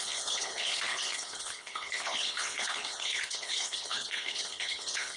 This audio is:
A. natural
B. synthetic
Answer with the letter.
B